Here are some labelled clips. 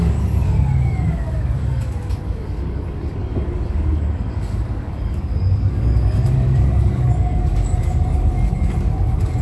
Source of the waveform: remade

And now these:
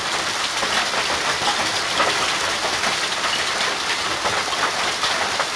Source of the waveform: recorded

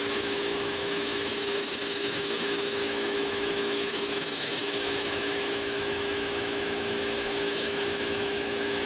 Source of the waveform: remade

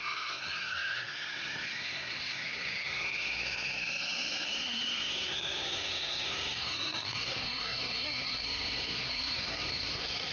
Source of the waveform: remade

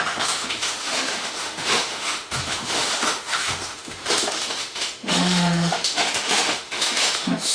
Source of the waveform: remade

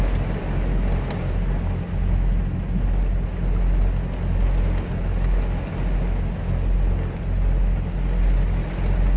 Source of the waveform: recorded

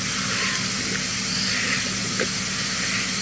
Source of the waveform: recorded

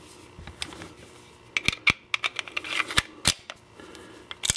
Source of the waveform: recorded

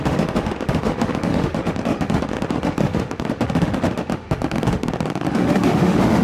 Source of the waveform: remade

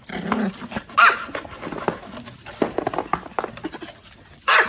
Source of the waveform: recorded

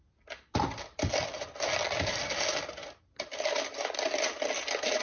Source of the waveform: recorded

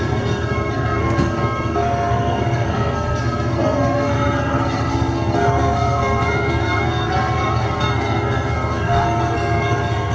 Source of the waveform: remade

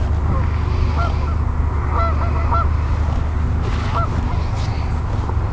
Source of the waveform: recorded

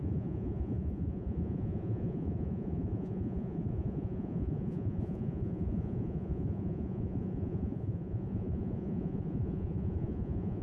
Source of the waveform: remade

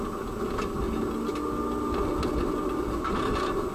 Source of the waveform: recorded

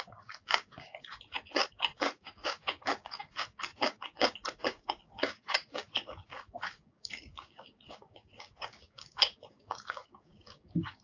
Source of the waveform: remade